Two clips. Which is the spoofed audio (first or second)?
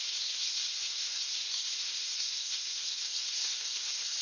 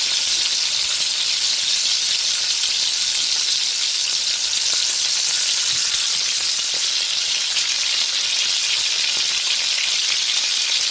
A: first